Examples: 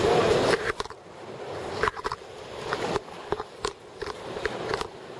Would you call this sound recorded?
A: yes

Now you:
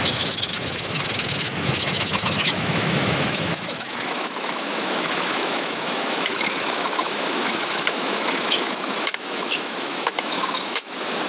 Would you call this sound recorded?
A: no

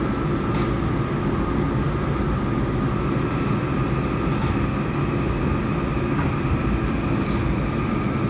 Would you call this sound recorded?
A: yes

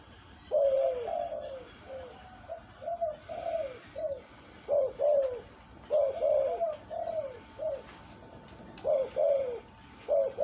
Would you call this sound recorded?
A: no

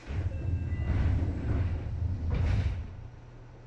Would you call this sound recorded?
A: yes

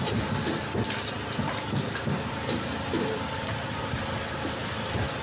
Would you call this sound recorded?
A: yes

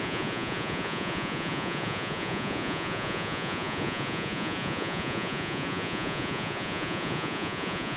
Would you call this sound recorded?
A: no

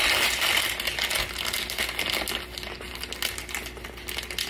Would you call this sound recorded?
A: yes